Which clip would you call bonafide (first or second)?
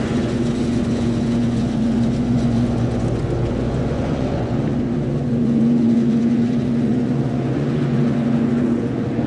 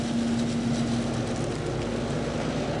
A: second